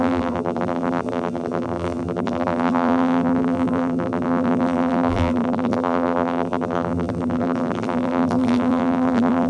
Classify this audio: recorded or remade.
remade